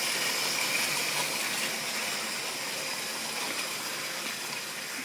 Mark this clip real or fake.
real